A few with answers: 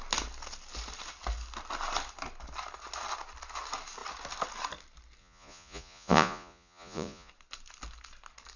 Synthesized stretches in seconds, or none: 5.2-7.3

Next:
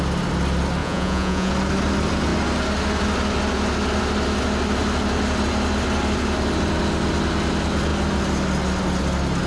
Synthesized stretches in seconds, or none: 0.8-1.5

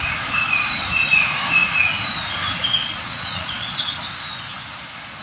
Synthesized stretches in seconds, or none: 2.8-3.9

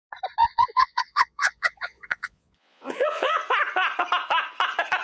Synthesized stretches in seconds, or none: 0.4-3.4

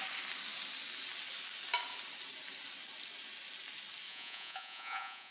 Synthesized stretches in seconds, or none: 4.1-5.3